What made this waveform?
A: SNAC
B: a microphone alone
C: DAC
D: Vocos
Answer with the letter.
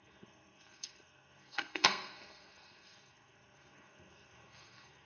A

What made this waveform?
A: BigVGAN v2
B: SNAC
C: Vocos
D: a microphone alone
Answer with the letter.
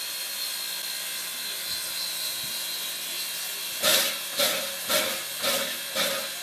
D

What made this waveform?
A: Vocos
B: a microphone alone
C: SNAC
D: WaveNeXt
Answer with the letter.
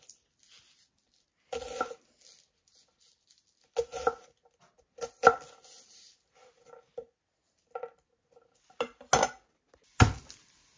B